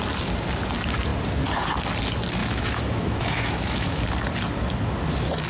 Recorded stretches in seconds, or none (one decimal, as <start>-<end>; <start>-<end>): 0.0-2.4; 4.0-5.5

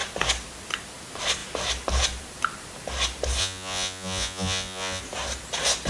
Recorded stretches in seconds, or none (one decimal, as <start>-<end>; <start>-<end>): 0.0-3.4; 5.0-5.9

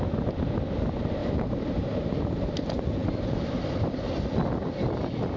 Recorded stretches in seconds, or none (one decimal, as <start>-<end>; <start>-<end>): 0.0-1.2; 1.9-5.4

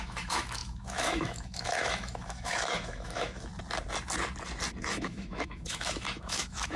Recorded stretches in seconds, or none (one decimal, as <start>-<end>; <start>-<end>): 3.5-4.8

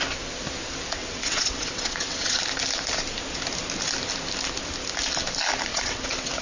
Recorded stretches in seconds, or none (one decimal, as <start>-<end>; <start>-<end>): 0.0-1.0; 2.4-5.7